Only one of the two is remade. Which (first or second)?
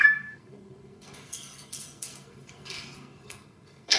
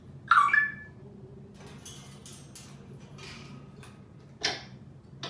first